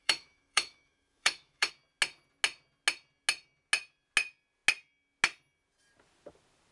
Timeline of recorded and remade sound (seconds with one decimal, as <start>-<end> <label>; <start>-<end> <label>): 0.0-1.7 remade; 1.7-6.7 recorded